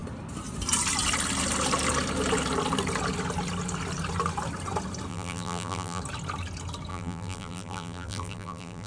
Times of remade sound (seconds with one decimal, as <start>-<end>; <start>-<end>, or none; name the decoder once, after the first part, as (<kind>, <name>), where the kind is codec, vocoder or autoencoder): 5.1-6.0 (vocoder, BigVGAN v2); 6.9-8.9